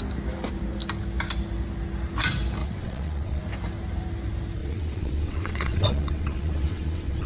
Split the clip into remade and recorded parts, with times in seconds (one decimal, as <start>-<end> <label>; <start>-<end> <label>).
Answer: 0.0-2.6 recorded; 2.6-3.4 remade; 3.4-4.6 recorded; 4.6-7.3 remade